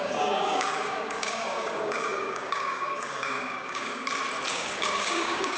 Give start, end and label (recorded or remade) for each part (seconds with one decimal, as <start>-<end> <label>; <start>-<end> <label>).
0.0-4.0 remade; 4.0-4.5 recorded; 4.5-5.6 remade